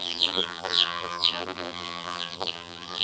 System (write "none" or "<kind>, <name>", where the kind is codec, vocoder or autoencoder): vocoder, BigVGAN v2